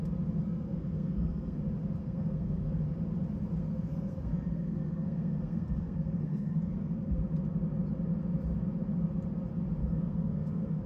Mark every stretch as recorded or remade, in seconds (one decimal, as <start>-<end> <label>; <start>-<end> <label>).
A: 0.0-0.4 recorded; 0.4-1.6 remade; 1.6-2.0 recorded; 2.0-2.8 remade; 2.8-3.6 recorded; 3.6-7.2 remade; 7.2-9.8 recorded; 9.8-10.9 remade